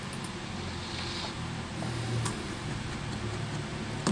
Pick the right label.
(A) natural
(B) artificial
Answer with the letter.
A